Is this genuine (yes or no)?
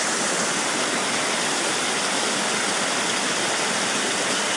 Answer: yes